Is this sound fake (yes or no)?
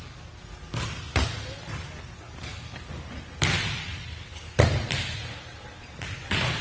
yes